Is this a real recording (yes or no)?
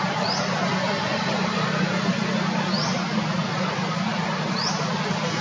yes